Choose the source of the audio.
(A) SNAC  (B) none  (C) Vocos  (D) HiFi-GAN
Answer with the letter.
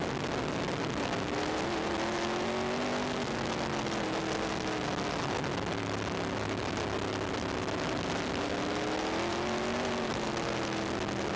B